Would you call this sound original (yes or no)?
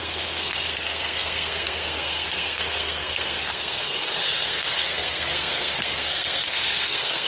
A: no